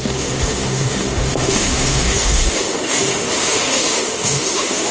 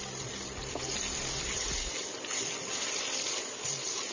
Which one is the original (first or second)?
second